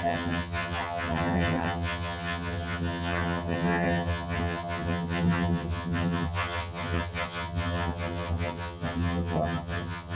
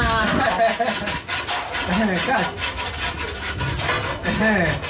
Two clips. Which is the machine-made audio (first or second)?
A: first